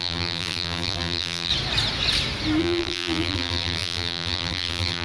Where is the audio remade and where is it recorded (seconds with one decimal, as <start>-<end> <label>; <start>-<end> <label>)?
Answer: 0.0-1.5 remade; 1.5-2.6 recorded; 2.6-5.0 remade